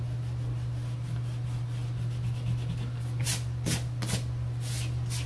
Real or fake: real